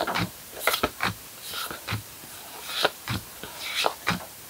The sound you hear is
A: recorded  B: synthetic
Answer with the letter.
B